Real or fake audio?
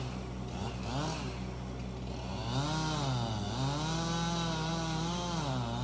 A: real